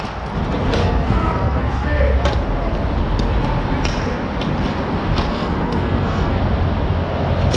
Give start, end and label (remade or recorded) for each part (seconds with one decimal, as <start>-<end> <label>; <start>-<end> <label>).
0.0-0.8 recorded; 0.8-2.0 remade; 2.0-5.3 recorded; 5.3-6.4 remade; 6.4-7.6 recorded